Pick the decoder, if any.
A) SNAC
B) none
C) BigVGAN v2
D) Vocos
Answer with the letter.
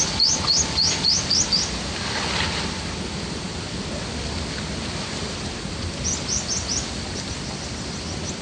B